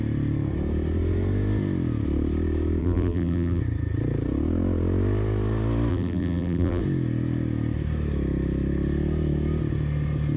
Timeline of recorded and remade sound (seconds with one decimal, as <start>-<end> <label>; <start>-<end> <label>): 0.0-2.8 recorded; 2.8-3.6 remade; 3.6-5.9 recorded; 5.9-6.8 remade; 6.8-10.4 recorded